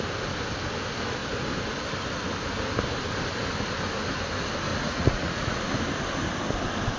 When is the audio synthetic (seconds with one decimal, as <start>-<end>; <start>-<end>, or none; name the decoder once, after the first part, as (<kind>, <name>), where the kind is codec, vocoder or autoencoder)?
4.7-5.6 (vocoder, Vocos)